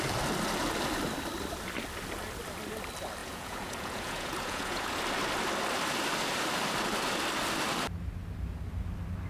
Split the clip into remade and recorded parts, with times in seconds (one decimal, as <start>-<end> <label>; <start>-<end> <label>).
0.0-3.2 recorded; 3.2-5.0 remade; 5.0-9.3 recorded

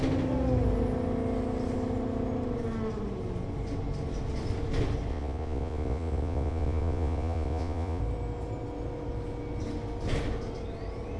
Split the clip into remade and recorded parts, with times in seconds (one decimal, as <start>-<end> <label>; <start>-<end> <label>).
0.0-5.1 recorded; 5.1-8.0 remade; 8.0-11.2 recorded

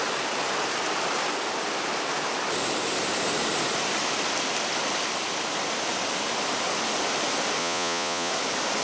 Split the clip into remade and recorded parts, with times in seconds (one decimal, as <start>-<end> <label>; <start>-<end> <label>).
0.0-7.6 recorded; 7.6-8.3 remade; 8.3-8.8 recorded

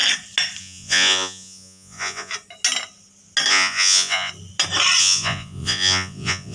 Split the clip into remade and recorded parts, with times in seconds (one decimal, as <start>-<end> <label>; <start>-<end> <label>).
0.0-0.6 recorded; 0.6-2.3 remade; 2.3-3.5 recorded; 3.5-4.3 remade; 4.3-5.0 recorded; 5.0-6.5 remade

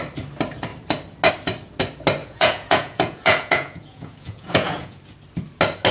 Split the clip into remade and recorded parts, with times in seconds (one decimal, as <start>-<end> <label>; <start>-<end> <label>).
0.0-2.2 recorded; 2.2-5.0 remade; 5.0-5.9 recorded

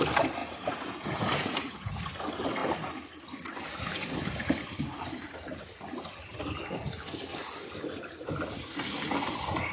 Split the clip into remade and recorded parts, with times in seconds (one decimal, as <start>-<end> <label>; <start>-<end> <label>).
0.0-0.4 recorded; 0.4-1.9 remade; 1.9-9.7 recorded

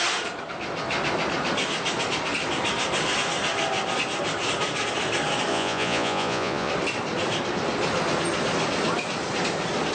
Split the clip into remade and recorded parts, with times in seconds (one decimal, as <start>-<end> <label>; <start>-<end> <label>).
0.0-5.5 recorded; 5.5-6.7 remade; 6.7-9.9 recorded

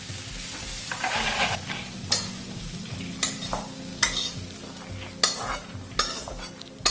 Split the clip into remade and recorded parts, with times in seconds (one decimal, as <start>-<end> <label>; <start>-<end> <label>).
0.0-6.9 recorded